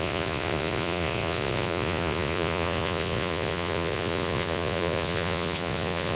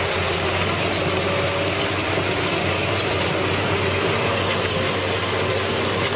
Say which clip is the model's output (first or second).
first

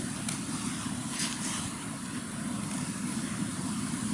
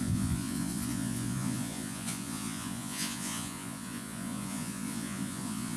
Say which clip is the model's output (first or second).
second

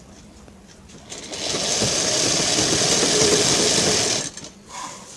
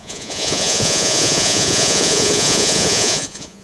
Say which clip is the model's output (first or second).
second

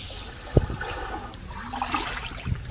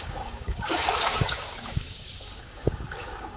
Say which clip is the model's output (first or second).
second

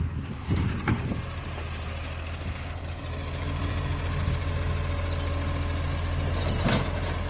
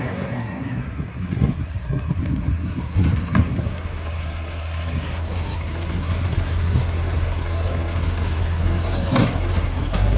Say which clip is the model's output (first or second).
second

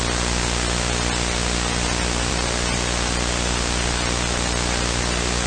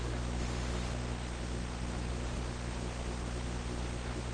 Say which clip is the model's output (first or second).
second